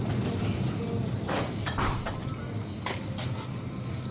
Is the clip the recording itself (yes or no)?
yes